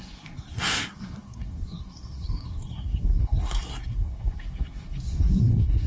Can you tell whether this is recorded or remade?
remade